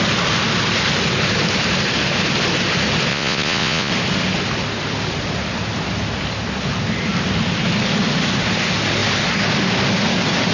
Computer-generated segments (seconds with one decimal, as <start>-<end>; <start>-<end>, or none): 3.1-3.9